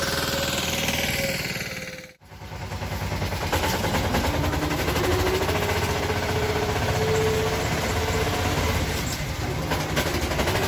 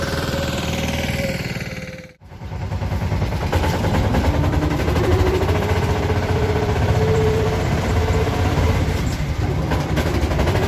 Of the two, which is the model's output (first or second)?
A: second